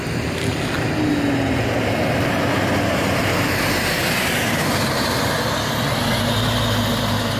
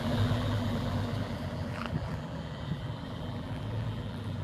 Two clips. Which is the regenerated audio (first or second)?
second